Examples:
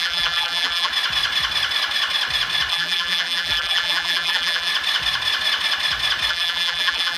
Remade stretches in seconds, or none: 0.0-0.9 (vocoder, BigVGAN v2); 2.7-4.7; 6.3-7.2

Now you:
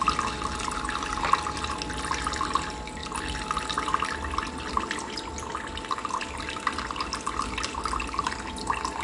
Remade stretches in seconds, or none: none

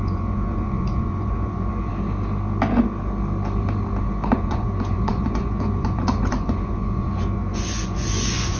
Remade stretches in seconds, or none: 0.0-1.9 (vocoder, Vocos); 4.0-8.6

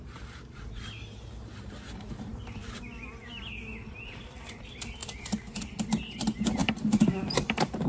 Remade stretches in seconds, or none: 0.0-5.0 (vocoder, BigVGAN v2); 6.1-7.9

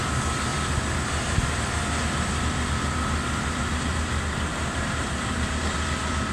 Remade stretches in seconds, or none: 4.5-5.6 (vocoder, BigVGAN v2)

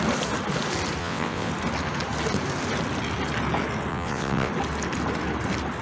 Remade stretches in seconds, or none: 1.0-1.5 (vocoder, WaveNeXt); 3.9-4.5

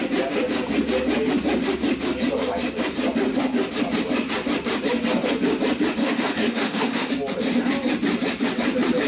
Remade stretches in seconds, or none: 6.0-7.1 (autoencoder, DAC-VAE)

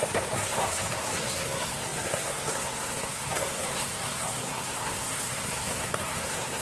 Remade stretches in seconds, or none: 0.0-6.6 (codec, SNAC)